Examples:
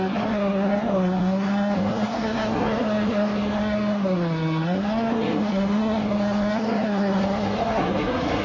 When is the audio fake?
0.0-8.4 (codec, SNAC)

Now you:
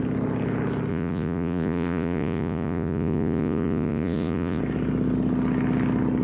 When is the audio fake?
0.9-4.6 (vocoder, Vocos)